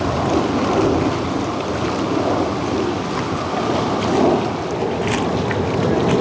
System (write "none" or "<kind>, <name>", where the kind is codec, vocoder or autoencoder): none